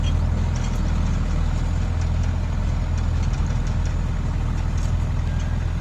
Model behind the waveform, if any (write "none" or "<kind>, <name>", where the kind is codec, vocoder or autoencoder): none